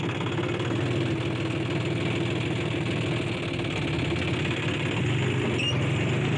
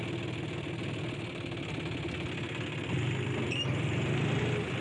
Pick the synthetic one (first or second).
second